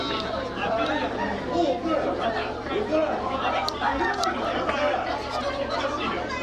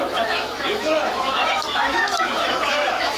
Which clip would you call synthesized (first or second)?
second